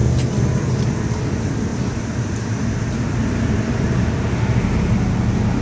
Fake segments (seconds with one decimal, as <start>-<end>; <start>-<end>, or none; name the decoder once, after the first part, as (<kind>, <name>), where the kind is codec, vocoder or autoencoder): none

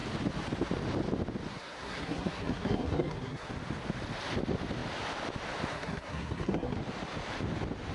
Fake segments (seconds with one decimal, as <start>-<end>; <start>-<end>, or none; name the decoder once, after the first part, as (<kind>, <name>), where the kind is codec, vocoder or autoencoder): 1.5-3.5 (codec, SNAC); 5.7-6.8

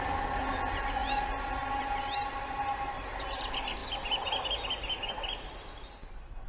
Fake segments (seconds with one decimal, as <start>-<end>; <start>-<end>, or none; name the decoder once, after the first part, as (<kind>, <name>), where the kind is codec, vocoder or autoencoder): none